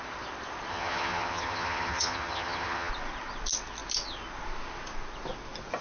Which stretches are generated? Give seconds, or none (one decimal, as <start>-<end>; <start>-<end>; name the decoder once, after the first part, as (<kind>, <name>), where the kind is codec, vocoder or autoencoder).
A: 0.7-2.9 (vocoder, HiFi-GAN)